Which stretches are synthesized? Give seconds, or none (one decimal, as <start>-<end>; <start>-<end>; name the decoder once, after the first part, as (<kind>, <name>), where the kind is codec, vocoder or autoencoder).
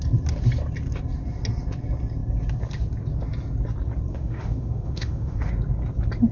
4.1-5.5 (autoencoder, DAC-VAE)